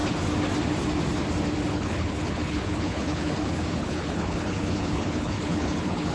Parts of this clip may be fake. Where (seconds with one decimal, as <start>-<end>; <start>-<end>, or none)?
1.7-6.1